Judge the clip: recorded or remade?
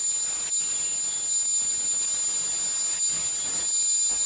recorded